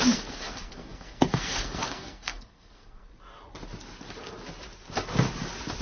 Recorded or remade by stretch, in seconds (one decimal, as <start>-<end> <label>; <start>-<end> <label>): 0.0-3.1 remade; 3.1-5.8 recorded